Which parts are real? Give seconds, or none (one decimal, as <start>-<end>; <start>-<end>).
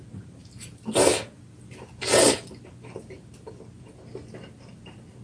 0.0-5.2